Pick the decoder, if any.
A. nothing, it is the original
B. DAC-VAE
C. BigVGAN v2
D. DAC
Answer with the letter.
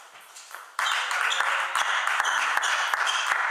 A